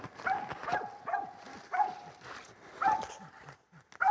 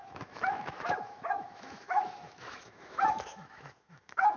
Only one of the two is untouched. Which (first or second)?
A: first